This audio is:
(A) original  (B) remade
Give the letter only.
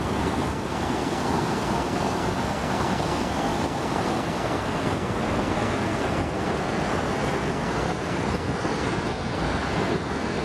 B